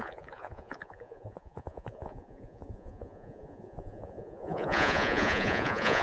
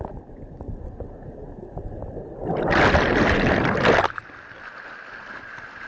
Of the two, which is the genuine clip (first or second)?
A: second